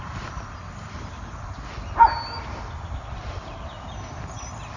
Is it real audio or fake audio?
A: real